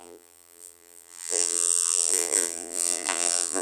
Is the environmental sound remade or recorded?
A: remade